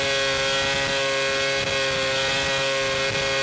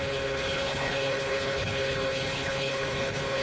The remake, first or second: second